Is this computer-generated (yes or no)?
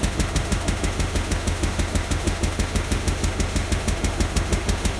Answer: yes